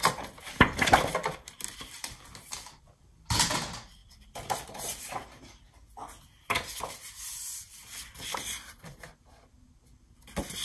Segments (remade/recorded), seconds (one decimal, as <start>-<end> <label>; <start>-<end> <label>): 0.0-10.6 recorded